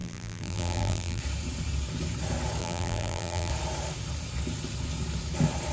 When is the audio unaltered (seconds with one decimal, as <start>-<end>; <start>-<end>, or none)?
1.2-2.6; 3.5-5.7